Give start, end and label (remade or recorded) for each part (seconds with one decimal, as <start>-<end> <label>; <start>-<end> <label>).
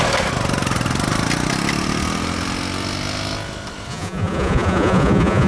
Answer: 0.0-3.9 recorded; 3.9-5.5 remade